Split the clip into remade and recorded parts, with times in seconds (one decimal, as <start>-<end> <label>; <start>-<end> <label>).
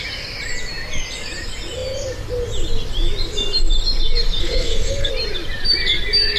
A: 0.0-4.4 recorded; 4.4-5.1 remade; 5.1-6.4 recorded